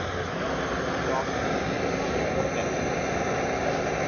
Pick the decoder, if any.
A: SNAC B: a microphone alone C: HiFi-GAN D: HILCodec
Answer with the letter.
B